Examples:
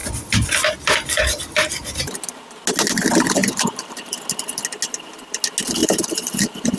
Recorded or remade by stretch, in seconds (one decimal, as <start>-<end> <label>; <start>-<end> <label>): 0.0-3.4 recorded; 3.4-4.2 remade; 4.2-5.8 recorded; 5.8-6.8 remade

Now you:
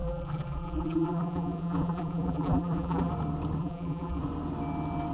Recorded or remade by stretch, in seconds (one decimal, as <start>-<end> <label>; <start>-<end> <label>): 0.0-3.1 remade; 3.1-3.6 recorded; 3.6-4.2 remade; 4.2-5.1 recorded

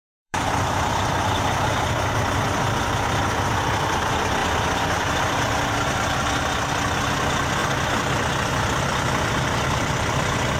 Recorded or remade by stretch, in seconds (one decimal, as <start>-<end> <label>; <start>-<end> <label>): 0.0-4.4 remade; 4.4-7.1 recorded; 7.1-7.6 remade; 7.6-8.5 recorded; 8.5-10.6 remade